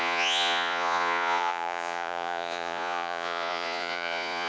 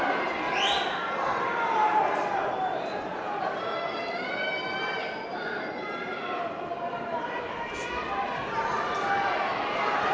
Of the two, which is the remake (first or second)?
first